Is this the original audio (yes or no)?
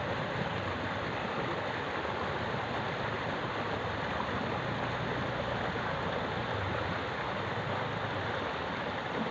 yes